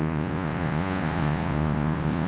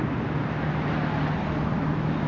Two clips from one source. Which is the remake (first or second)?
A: first